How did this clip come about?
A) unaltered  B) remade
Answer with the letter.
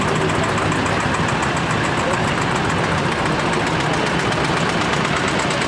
A